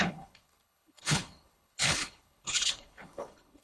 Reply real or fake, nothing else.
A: fake